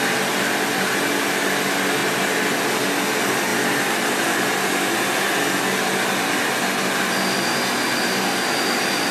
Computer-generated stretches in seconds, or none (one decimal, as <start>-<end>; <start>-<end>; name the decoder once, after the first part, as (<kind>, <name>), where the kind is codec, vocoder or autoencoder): none